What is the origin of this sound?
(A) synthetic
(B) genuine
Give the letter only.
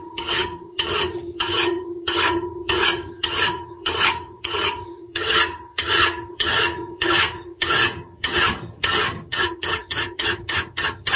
A